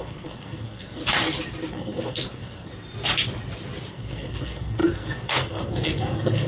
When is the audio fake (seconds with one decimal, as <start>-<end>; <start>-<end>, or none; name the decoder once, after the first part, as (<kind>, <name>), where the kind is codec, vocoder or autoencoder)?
0.0-1.0 (codec, SNAC); 1.7-2.7; 3.9-6.5